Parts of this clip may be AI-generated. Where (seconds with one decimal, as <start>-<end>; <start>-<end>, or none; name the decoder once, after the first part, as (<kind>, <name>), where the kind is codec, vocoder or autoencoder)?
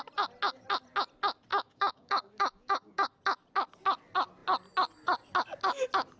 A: 1.5-3.1 (codec, DAC)